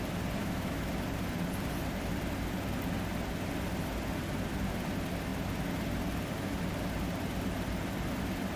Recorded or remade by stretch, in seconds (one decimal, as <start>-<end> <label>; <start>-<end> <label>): 0.0-0.4 recorded; 0.4-0.9 remade; 0.9-8.6 recorded